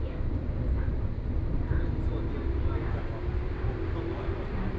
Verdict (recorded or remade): recorded